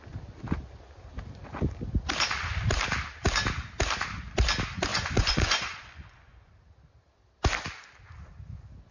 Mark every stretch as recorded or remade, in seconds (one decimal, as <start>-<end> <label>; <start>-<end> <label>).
0.0-4.9 recorded; 4.9-6.5 remade; 6.5-8.9 recorded